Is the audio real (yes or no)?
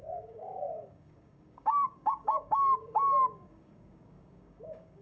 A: no